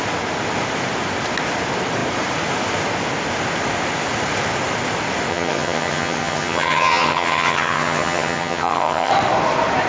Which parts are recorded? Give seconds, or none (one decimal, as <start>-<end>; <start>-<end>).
0.0-5.3; 9.1-9.9